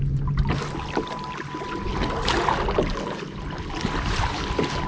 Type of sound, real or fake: real